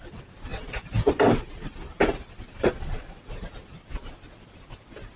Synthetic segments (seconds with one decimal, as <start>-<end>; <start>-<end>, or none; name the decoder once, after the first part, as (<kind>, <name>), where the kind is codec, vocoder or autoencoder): none